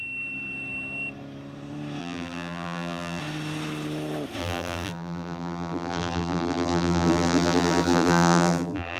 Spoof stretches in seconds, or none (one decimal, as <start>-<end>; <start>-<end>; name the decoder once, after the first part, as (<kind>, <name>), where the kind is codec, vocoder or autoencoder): 2.0-3.2 (vocoder, BigVGAN v2); 4.4-9.0